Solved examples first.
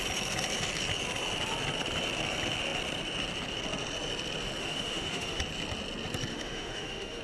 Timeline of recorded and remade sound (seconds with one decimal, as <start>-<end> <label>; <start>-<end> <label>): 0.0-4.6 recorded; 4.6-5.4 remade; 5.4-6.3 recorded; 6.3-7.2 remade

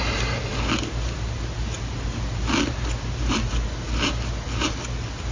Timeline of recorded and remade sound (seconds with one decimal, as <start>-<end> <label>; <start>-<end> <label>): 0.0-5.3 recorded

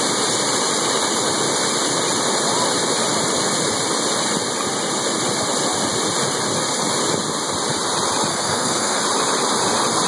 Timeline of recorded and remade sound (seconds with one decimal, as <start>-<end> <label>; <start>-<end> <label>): 0.0-8.3 recorded; 8.3-9.0 remade; 9.0-10.1 recorded

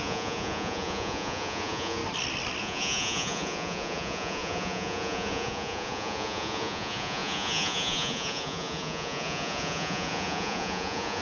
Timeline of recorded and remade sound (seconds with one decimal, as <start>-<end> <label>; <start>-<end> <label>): 0.0-2.0 remade; 2.0-2.6 recorded; 2.6-11.2 remade